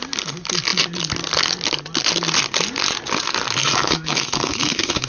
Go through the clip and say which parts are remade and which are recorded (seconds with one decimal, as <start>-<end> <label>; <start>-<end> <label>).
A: 0.0-3.6 recorded; 3.6-5.1 remade